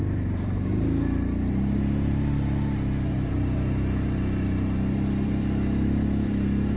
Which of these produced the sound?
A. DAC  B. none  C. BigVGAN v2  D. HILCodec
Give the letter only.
C